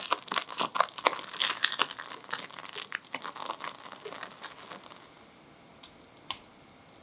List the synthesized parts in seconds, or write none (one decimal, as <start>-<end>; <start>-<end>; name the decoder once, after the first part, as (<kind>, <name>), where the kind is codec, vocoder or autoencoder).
none